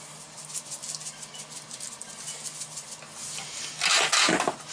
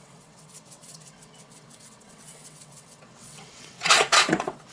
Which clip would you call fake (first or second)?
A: second